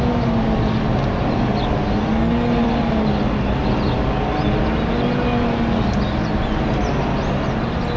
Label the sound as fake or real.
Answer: real